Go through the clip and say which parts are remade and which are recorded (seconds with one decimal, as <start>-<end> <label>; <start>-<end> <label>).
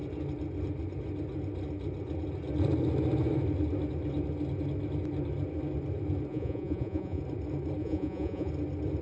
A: 0.0-6.3 recorded; 6.3-7.2 remade; 7.2-7.8 recorded; 7.8-8.5 remade; 8.5-9.0 recorded